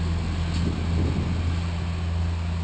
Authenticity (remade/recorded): recorded